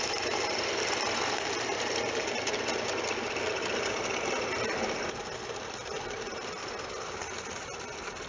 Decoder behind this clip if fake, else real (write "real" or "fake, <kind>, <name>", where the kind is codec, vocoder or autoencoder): real